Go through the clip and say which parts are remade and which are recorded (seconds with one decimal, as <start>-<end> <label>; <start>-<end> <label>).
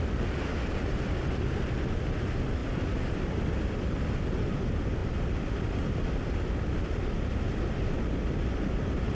0.0-9.1 recorded